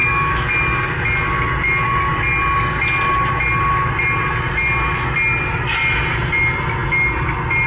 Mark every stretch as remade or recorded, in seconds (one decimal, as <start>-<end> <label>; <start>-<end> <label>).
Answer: 0.0-0.5 remade; 0.5-7.7 recorded